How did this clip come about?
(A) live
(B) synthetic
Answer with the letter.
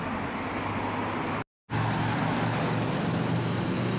A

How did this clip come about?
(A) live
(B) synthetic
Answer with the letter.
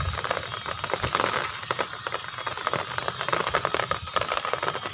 A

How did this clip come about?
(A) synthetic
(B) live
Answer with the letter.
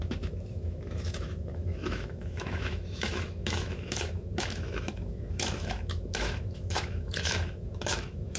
A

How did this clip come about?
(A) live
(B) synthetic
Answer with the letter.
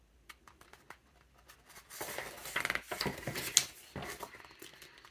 A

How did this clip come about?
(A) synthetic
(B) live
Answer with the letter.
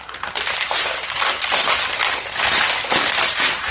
B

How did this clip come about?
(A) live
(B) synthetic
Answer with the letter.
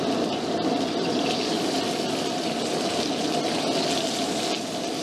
A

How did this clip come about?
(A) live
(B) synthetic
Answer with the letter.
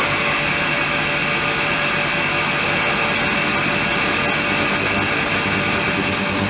A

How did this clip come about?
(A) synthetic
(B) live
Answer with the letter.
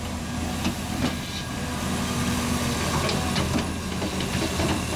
B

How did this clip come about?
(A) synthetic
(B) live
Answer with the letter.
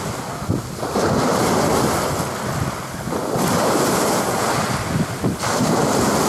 B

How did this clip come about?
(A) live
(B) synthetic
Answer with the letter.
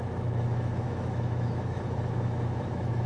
B